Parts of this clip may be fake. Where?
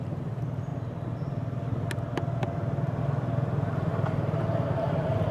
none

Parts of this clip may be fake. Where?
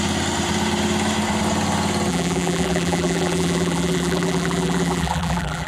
2.1-5.7 (vocoder, BigVGAN v2)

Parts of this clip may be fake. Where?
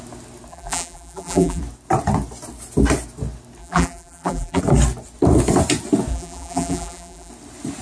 0.5-1.6 (vocoder, BigVGAN v2); 3.6-4.6; 6.1-7.3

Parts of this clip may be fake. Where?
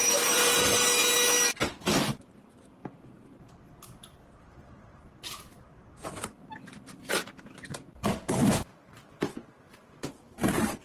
0.0-1.0 (vocoder, BigVGAN v2); 1.8-10.8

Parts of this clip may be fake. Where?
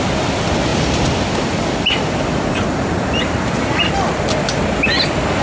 0.7-3.9 (vocoder, BigVGAN v2)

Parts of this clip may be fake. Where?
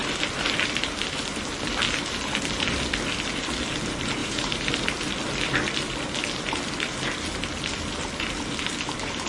4.2-4.7 (vocoder, BigVGAN v2)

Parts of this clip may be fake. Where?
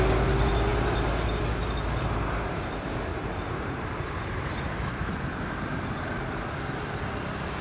3.1-4.9 (vocoder, BigVGAN v2)